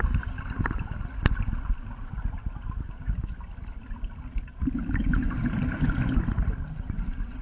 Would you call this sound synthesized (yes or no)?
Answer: no